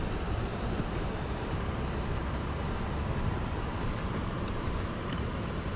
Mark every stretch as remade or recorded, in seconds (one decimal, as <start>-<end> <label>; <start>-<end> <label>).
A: 0.0-5.8 remade